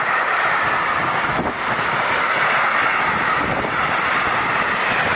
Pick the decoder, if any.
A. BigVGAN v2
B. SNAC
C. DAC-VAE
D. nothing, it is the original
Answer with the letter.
D